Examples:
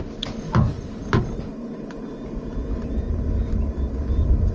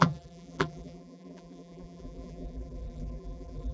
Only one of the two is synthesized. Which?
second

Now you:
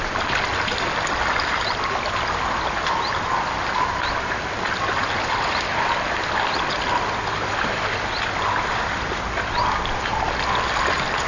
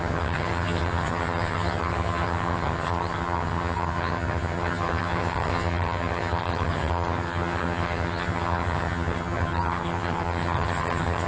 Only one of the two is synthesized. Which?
second